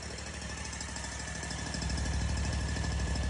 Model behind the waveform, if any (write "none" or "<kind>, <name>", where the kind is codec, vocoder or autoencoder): vocoder, BigVGAN v2